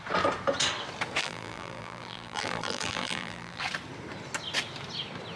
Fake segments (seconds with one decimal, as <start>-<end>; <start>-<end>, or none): 1.2-3.6